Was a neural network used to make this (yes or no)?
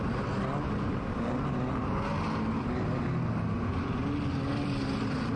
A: no